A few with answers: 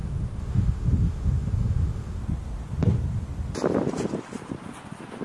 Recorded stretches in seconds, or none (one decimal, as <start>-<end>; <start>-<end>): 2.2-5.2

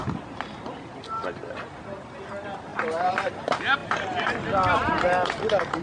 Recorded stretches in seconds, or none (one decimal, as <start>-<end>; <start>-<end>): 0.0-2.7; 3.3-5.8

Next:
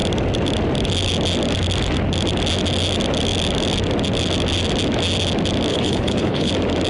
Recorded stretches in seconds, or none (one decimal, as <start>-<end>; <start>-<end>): 0.0-5.7; 6.5-6.9